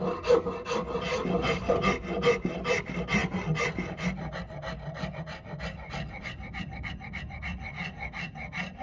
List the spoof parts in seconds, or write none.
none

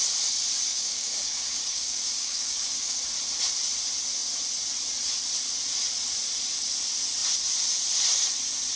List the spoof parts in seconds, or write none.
0.7-3.0 (codec, DAC)

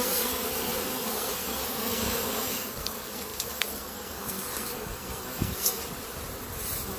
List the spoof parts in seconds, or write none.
0.0-5.8 (codec, SNAC)

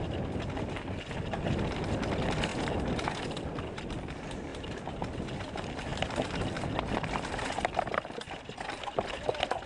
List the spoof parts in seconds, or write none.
none

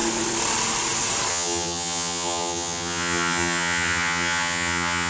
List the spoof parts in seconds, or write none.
1.3-5.1 (vocoder, HiFi-GAN)

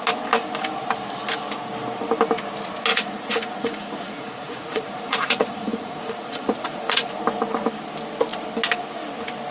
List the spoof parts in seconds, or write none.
2.9-7.1 (vocoder, Vocos)

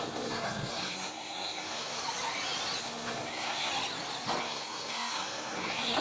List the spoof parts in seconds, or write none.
0.0-2.0 (codec, SNAC); 2.8-3.7; 4.4-6.0

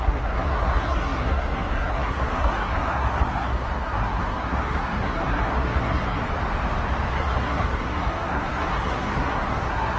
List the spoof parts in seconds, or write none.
0.0-6.2 (codec, SNAC); 7.1-10.0